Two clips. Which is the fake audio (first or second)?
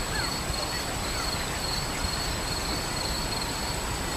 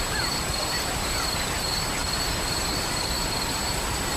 second